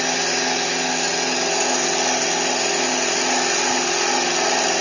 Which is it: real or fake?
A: real